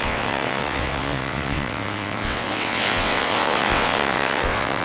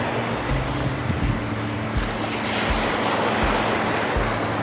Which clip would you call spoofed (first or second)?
first